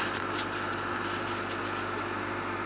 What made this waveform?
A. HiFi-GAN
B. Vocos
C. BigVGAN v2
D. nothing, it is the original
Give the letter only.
D